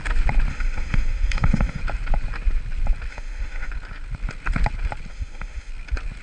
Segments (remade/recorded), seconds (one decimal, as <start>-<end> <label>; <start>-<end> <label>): 0.0-0.5 recorded; 0.5-1.8 remade; 1.8-3.1 recorded; 3.1-3.7 remade; 3.7-5.1 recorded; 5.1-5.7 remade; 5.7-6.2 recorded